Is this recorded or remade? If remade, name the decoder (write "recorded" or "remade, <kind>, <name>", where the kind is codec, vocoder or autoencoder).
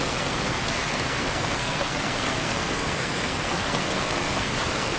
remade, codec, SNAC